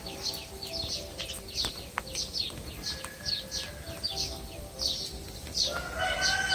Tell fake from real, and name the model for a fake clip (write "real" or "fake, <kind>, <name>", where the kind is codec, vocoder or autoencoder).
real